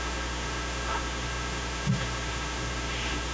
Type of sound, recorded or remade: remade